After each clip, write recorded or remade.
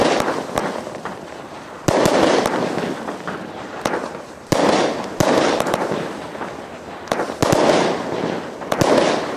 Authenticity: recorded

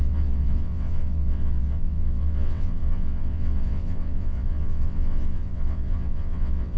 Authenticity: remade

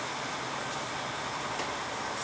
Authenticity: recorded